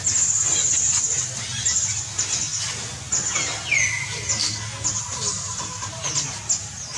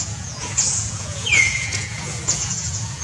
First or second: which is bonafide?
first